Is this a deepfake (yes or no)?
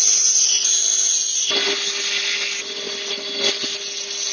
no